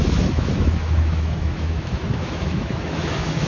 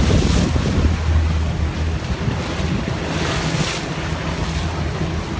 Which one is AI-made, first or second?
first